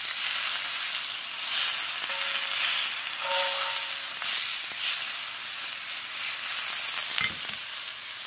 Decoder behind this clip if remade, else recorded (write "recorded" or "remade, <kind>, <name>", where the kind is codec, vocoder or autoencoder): recorded